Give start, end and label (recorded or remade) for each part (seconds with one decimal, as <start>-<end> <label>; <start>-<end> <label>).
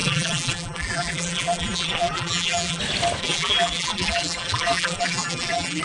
0.0-2.8 remade; 2.8-3.2 recorded; 3.2-5.8 remade